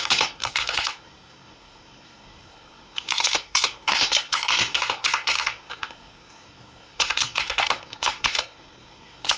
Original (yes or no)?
no